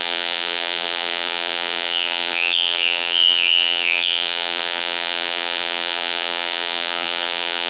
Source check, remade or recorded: remade